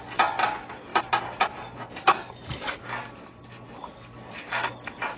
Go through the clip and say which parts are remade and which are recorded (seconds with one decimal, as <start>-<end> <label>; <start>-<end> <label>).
0.0-0.9 recorded; 0.9-2.8 remade; 2.8-5.2 recorded